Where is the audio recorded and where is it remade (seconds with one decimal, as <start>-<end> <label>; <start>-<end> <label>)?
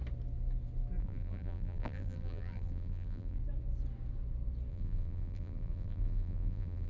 0.0-1.0 recorded; 1.0-3.4 remade; 3.4-4.7 recorded; 4.7-6.9 remade